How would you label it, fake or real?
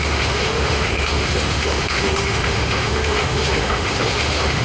fake